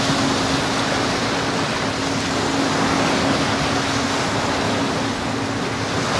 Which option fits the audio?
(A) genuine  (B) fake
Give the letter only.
A